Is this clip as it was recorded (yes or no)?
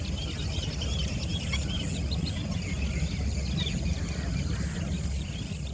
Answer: yes